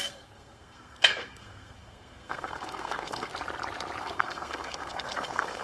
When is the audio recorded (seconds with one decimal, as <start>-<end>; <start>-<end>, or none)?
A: 3.3-4.0